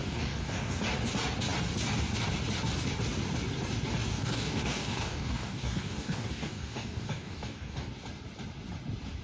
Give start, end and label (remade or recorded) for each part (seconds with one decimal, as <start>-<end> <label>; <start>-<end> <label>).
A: 0.0-0.8 remade; 0.8-4.1 recorded; 4.1-7.9 remade; 7.9-9.2 recorded